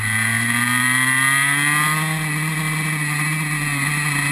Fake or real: real